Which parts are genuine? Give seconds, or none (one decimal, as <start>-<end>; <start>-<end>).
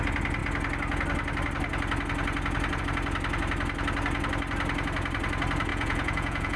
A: 0.0-5.7